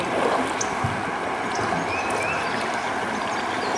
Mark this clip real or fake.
real